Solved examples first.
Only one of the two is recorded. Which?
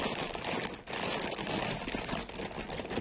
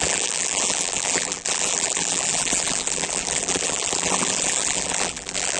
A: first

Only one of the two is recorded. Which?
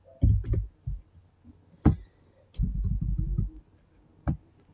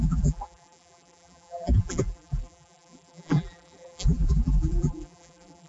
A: first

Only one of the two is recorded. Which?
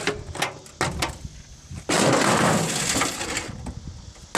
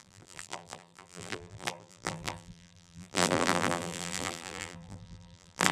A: first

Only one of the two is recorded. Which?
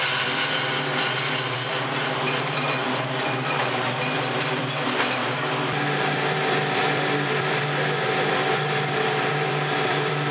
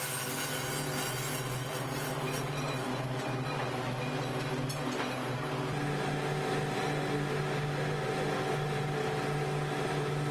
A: second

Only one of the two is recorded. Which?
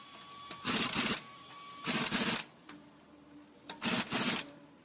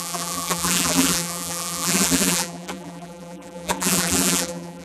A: first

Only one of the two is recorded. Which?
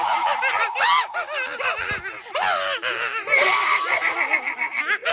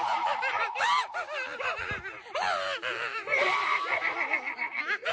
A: first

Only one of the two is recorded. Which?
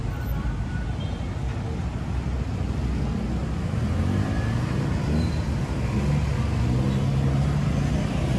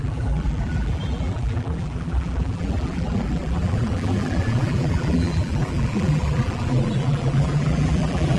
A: first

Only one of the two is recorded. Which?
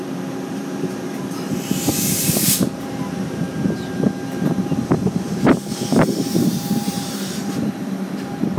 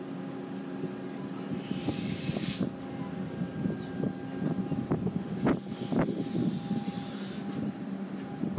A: second